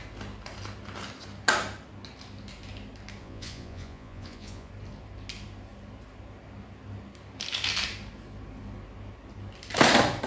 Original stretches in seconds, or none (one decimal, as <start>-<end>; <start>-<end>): 0.0-3.2; 4.7-10.3